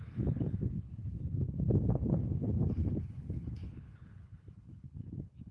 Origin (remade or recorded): remade